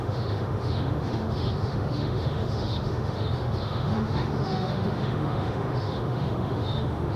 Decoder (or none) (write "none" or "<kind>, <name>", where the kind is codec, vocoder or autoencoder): autoencoder, DAC-VAE